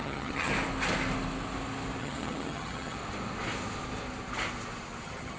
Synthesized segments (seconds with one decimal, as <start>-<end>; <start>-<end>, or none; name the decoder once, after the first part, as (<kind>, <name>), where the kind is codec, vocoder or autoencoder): 0.0-0.5 (vocoder, HiFi-GAN); 2.0-3.0; 5.0-5.4